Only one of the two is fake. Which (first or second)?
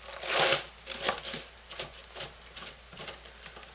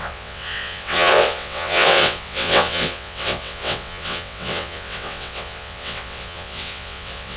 second